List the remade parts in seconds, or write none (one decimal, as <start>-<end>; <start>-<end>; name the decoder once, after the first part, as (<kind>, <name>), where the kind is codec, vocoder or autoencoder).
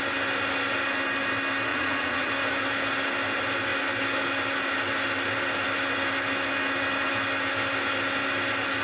1.7-2.3 (vocoder, Vocos)